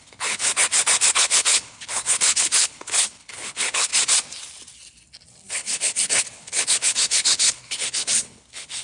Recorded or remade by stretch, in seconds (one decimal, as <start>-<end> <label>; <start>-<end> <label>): 0.0-0.5 remade; 0.5-1.1 recorded; 1.1-3.9 remade; 3.9-5.5 recorded; 5.5-8.8 remade